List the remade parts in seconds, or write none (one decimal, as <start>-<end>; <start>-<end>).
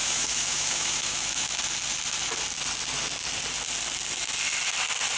0.0-1.6